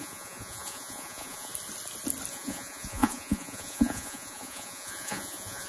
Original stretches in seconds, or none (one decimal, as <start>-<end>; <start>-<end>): 1.5-2.3